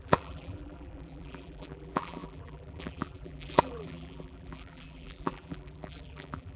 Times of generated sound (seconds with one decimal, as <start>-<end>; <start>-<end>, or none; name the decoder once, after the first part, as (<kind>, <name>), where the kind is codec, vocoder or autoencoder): 0.0-6.6 (vocoder, BigVGAN v2)